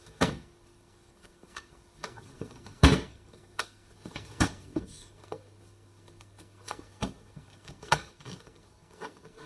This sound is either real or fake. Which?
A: fake